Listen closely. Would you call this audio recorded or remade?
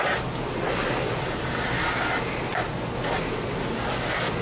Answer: recorded